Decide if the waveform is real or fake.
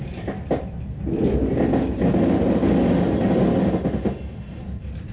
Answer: real